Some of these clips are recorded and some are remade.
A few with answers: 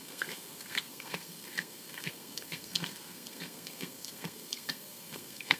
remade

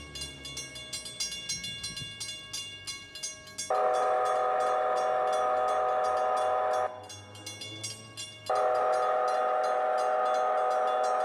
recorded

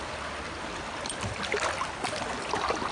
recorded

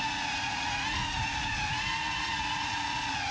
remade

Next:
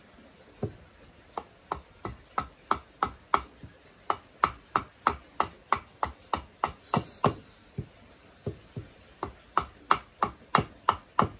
recorded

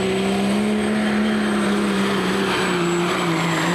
recorded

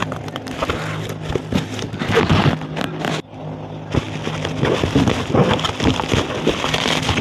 recorded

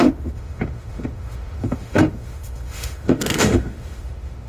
remade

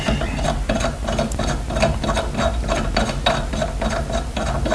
recorded